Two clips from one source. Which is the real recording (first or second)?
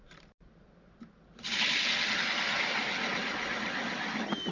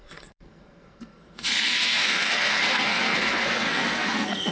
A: first